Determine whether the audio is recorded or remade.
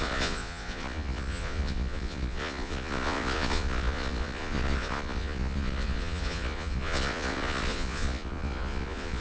remade